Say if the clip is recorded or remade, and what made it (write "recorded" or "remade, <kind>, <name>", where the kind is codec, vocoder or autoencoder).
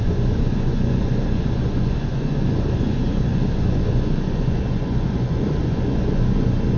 remade, vocoder, Vocos